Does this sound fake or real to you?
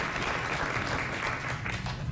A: real